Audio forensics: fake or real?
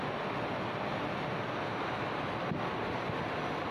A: real